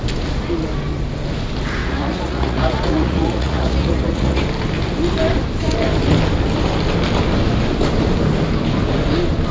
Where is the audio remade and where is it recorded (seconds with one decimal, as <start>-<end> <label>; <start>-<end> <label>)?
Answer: 0.0-1.8 recorded; 1.8-4.4 remade; 4.4-9.5 recorded